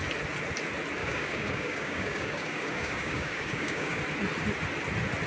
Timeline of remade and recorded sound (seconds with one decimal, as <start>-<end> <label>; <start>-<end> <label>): 0.0-1.0 recorded; 1.0-4.0 remade; 4.0-5.3 recorded